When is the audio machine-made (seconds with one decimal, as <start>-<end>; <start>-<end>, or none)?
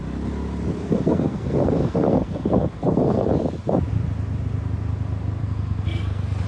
0.7-3.3; 5.4-6.5